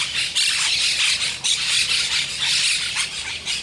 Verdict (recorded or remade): recorded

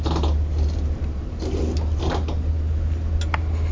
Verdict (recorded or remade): recorded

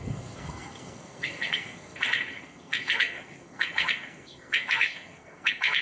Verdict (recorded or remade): remade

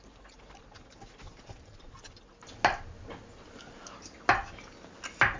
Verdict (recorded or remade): recorded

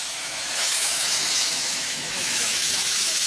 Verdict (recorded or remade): remade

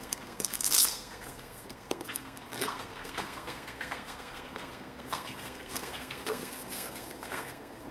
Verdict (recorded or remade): remade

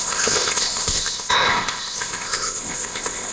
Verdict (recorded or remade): remade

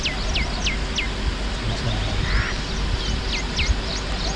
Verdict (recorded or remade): recorded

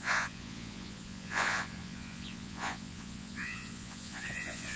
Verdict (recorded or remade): remade